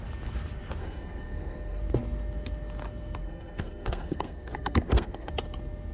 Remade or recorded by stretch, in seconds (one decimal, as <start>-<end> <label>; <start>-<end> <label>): 0.0-0.8 recorded; 0.8-1.8 remade; 1.8-3.2 recorded; 3.2-5.3 remade; 5.3-5.9 recorded